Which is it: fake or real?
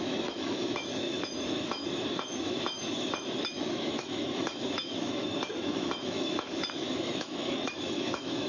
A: fake